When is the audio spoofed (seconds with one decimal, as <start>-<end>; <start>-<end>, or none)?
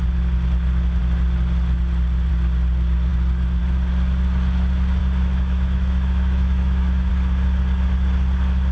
5.0-7.1